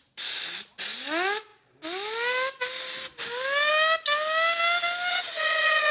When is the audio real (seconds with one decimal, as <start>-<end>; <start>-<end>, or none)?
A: 0.0-5.1